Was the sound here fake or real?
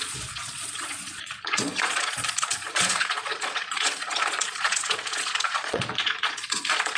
fake